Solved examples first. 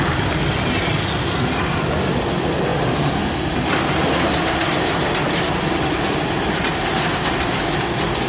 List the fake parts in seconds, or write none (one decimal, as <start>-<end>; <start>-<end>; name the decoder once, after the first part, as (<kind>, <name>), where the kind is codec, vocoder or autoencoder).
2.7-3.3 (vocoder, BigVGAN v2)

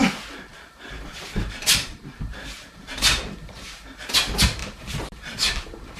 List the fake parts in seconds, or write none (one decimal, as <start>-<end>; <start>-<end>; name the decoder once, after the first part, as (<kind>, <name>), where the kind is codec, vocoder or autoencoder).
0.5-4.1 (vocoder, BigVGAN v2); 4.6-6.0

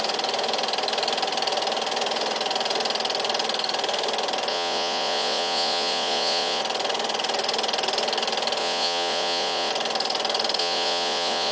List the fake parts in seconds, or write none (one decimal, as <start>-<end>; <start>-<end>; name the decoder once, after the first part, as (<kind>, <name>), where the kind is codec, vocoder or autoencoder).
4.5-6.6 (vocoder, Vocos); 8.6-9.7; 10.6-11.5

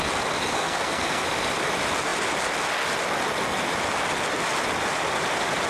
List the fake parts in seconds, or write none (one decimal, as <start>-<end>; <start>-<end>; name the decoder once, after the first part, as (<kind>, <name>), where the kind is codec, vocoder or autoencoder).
0.5-1.2 (codec, SNAC)

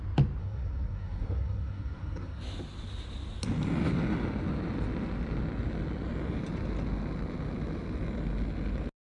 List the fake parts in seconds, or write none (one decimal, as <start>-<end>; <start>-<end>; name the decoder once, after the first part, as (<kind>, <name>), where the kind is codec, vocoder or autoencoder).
0.4-2.4 (codec, SNAC)

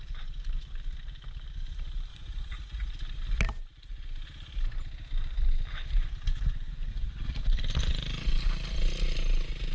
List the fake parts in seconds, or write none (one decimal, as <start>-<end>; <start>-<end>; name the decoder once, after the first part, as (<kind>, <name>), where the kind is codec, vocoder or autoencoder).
2.1-2.9 (vocoder, Vocos); 6.9-7.4

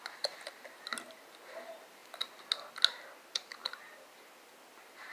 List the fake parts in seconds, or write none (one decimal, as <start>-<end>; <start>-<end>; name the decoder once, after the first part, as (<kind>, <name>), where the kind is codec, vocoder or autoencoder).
none

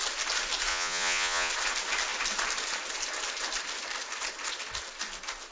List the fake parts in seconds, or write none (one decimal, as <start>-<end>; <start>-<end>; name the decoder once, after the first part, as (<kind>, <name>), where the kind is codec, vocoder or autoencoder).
0.7-1.5 (vocoder, Vocos)